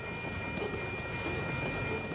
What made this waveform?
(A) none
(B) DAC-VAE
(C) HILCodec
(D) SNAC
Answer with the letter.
A